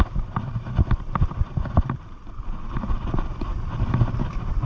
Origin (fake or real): real